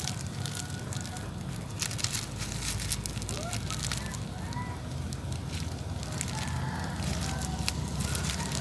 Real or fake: real